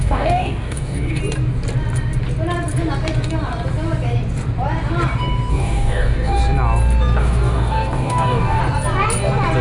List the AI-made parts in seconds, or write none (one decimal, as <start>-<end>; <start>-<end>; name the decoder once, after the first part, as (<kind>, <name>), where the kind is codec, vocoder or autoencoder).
0.0-1.2 (codec, DAC); 5.5-6.4; 7.2-8.6

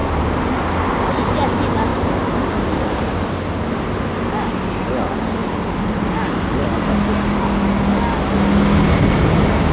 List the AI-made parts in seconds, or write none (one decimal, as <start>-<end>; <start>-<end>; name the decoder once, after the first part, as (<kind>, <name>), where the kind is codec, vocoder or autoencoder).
none